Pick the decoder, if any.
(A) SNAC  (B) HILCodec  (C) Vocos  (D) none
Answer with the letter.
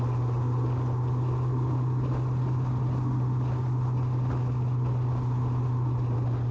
D